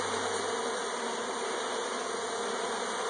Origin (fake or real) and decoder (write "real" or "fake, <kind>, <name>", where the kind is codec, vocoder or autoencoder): real